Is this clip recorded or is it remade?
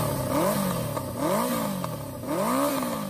recorded